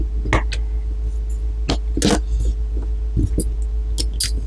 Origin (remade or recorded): recorded